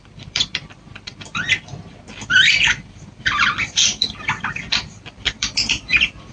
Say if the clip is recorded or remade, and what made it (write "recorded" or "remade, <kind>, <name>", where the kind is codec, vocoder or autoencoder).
remade, vocoder, BigVGAN v2